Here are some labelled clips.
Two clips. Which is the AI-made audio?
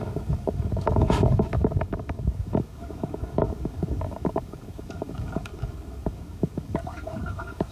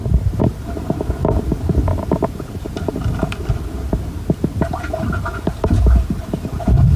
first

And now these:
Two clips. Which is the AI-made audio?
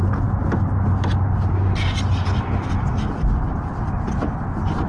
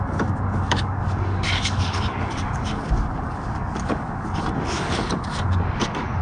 second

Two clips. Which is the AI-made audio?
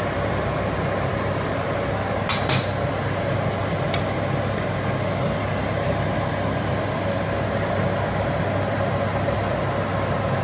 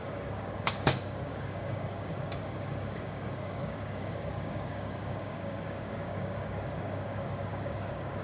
second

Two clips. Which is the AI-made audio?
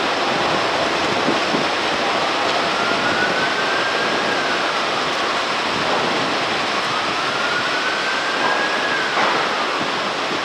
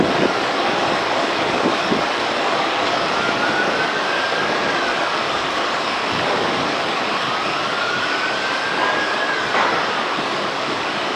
second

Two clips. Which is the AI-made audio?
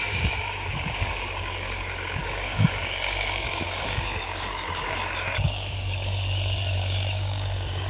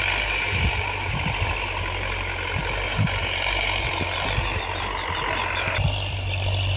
first